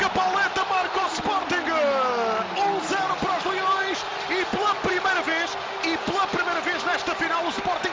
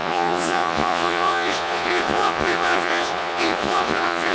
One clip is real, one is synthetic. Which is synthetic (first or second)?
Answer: second